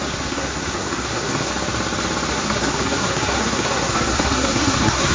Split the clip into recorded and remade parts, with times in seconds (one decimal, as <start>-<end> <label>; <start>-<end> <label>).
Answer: 0.0-1.5 remade; 1.5-2.3 recorded; 2.3-5.1 remade